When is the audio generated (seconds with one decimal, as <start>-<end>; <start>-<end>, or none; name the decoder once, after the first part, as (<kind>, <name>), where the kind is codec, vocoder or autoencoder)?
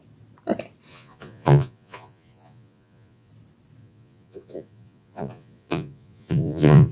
0.9-3.3 (vocoder, Vocos); 3.8-6.9